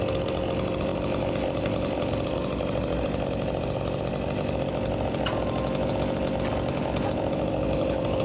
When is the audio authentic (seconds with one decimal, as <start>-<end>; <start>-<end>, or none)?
0.0-8.2